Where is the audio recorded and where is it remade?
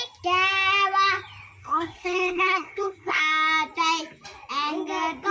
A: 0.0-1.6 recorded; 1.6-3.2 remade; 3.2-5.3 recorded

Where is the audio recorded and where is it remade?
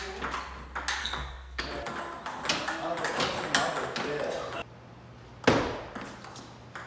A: 0.0-1.0 recorded; 1.0-1.6 remade; 1.6-6.9 recorded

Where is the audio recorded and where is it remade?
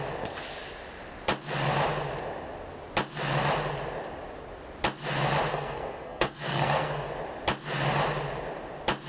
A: 0.0-5.5 recorded; 5.5-7.1 remade; 7.1-9.1 recorded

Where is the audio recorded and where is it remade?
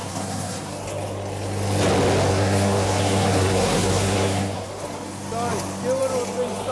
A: 0.0-0.7 remade; 0.7-2.3 recorded; 2.3-4.7 remade; 4.7-6.7 recorded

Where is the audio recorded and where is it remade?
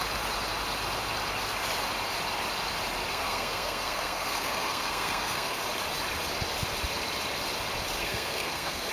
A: 0.0-3.1 recorded; 3.1-5.6 remade; 5.6-8.0 recorded; 8.0-8.9 remade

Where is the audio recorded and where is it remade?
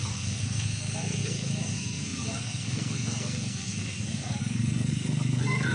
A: 0.0-5.7 remade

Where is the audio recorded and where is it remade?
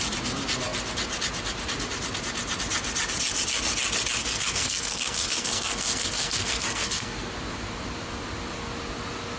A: 0.0-4.2 recorded; 4.2-7.3 remade; 7.3-9.4 recorded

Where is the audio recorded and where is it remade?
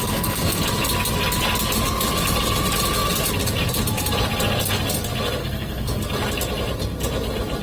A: 0.0-0.6 remade; 0.6-5.4 recorded; 5.4-6.0 remade; 6.0-7.6 recorded